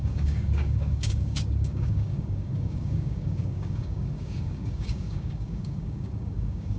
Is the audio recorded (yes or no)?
no